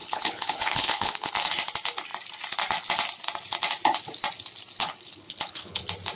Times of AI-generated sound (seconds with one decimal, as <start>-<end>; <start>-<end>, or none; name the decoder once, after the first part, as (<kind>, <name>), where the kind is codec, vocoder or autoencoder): 0.0-1.3 (codec, HILCodec); 4.8-5.8

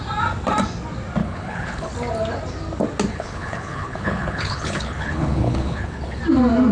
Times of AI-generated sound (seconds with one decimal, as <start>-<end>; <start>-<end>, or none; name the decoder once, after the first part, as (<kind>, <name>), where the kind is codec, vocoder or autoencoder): 1.2-1.9 (codec, HILCodec); 3.1-6.2

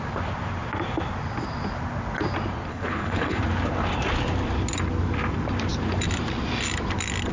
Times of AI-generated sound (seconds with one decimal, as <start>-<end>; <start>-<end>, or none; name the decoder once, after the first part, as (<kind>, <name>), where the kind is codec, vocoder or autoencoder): 2.7-3.4 (codec, HILCodec)

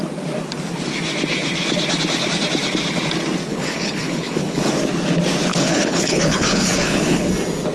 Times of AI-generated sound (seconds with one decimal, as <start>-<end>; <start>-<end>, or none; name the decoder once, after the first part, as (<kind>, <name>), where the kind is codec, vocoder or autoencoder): 3.5-4.7 (codec, HILCodec); 5.5-7.3

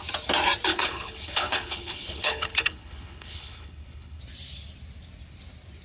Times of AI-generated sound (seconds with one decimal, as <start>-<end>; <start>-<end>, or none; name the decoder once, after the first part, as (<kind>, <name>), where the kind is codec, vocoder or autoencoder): 0.7-4.2 (codec, HILCodec)

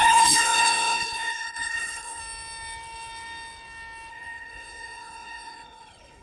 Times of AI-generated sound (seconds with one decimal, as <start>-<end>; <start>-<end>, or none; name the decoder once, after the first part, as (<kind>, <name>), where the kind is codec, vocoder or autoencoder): 0.0-2.2 (codec, HILCodec); 4.1-6.2

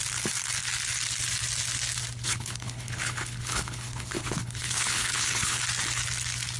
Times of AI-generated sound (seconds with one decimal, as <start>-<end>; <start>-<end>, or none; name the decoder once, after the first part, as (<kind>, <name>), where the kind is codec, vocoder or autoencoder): 2.2-5.6 (codec, HILCodec)